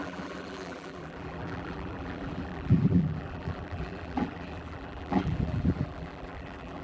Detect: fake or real fake